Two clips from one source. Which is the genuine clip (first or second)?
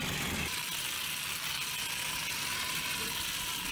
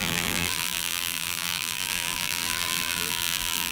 first